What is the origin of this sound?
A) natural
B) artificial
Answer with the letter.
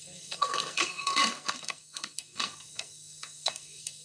B